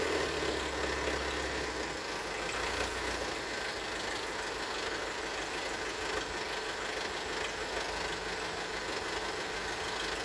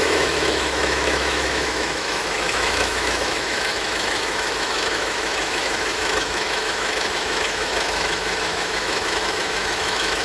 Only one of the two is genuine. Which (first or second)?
first